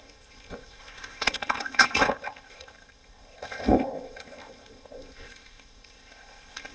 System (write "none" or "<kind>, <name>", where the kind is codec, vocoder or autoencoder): codec, ZipCodec